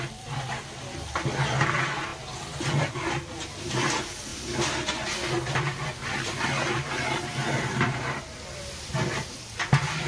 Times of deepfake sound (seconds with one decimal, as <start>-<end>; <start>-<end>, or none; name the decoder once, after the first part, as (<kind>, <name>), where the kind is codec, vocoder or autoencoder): none